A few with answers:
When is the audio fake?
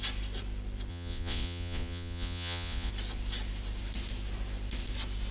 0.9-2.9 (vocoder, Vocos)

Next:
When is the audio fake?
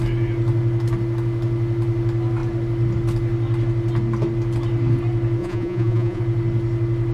5.4-6.2 (vocoder, Vocos)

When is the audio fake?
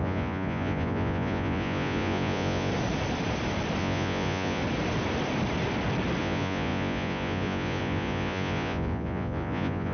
0.0-2.7 (vocoder, Vocos); 3.8-4.6; 6.2-9.9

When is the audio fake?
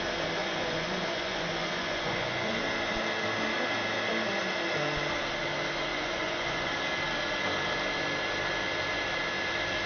0.4-2.6 (vocoder, Vocos); 5.9-6.7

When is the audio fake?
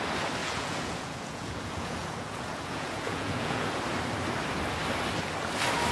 0.4-3.8 (vocoder, Vocos)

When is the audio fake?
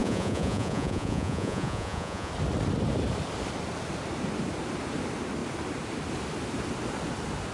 0.0-2.3 (vocoder, Vocos)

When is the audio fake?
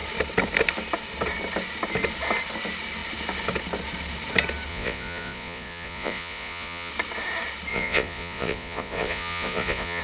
4.7-6.9 (vocoder, Vocos); 7.7-10.0